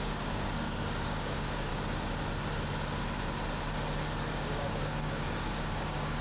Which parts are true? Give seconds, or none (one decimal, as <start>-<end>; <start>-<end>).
1.7-4.3